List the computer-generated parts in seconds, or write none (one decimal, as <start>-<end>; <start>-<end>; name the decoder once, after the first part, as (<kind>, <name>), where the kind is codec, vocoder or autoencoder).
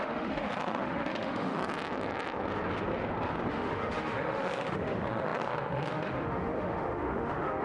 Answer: 0.0-1.6 (autoencoder, DAC-VAE); 3.5-7.6